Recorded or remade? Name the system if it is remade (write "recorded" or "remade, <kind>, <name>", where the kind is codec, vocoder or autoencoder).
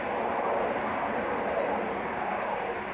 recorded